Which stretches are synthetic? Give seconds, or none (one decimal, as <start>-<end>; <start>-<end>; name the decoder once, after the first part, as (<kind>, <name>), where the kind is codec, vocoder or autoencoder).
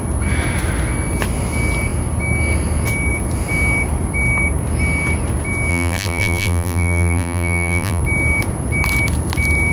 5.7-8.0 (vocoder, BigVGAN v2)